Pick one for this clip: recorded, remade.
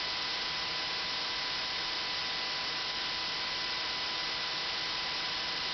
recorded